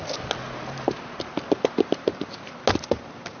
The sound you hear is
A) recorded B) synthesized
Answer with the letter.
A